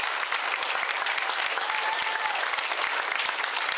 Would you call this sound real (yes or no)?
yes